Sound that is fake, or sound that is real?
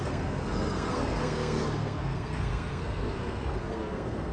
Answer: fake